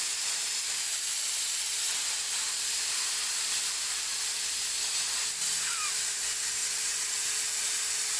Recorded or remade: recorded